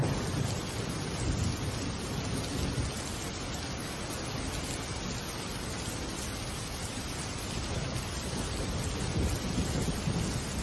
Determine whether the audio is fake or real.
real